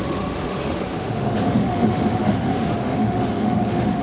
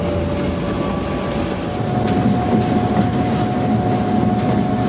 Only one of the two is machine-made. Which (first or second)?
first